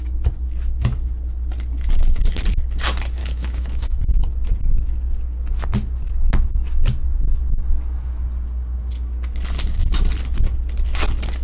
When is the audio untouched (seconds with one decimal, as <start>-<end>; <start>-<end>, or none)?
0.0-3.2; 4.0-11.4